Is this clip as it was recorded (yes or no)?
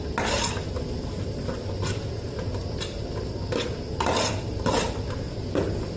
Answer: yes